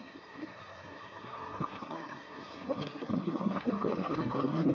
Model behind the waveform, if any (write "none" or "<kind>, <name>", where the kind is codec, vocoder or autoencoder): codec, SNAC